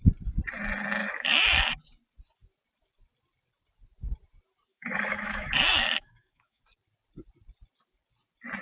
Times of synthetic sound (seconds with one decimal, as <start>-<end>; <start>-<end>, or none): 1.0-1.7; 4.7-6.6

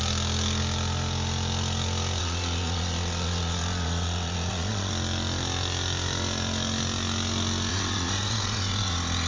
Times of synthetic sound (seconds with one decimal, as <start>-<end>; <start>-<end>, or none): 2.2-4.9; 7.7-9.3

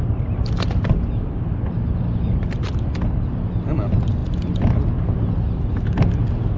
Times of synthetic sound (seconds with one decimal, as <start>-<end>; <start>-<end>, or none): none

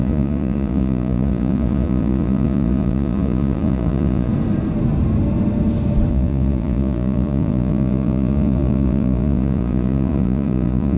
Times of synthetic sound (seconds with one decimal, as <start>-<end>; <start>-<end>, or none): 0.0-4.3; 6.1-11.0